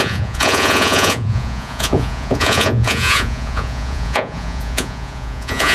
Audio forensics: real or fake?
fake